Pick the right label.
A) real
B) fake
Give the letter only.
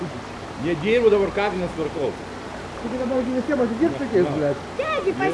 A